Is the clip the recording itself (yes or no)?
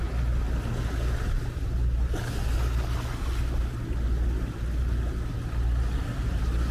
yes